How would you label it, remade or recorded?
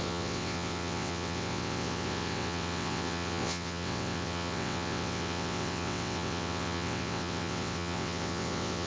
remade